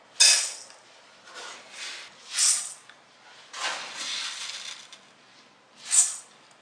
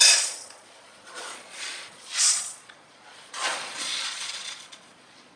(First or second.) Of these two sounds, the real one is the first